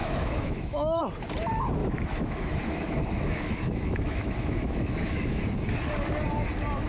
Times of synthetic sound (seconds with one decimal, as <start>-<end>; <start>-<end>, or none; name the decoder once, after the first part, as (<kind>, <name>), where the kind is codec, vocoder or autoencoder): 0.0-1.0 (autoencoder, DAC-VAE); 1.8-5.4